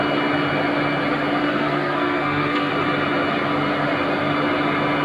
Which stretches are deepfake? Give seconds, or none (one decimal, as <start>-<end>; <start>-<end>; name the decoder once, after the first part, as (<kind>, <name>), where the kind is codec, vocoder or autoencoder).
1.4-2.7 (codec, SNAC)